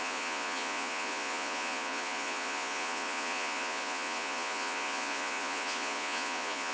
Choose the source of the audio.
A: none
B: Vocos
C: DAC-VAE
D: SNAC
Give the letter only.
B